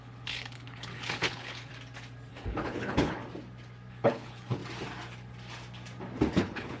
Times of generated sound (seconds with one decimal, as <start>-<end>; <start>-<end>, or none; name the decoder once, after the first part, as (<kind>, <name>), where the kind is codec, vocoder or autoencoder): 0.0-1.7 (codec, HILCodec); 2.3-3.2; 3.9-4.6; 6.3-6.8